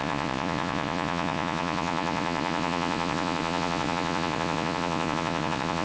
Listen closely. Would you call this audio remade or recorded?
remade